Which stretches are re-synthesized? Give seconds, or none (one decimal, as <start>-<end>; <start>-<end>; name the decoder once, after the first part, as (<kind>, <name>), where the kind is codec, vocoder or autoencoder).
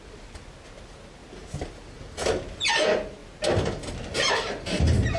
1.2-2.0 (vocoder, BigVGAN v2)